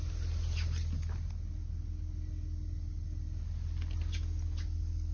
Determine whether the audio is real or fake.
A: real